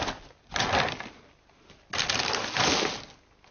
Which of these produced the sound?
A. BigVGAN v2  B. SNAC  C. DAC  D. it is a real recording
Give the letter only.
D